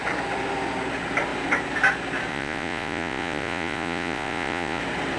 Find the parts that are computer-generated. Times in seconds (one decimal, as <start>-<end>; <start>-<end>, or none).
2.3-4.8